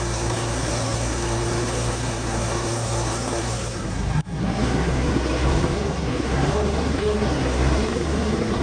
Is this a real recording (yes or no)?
no